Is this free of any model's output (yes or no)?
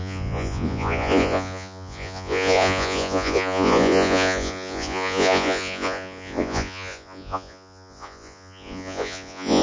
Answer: no